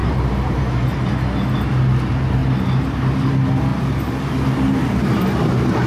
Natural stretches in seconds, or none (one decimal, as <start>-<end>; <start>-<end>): 0.6-3.7; 4.3-4.8; 5.5-5.9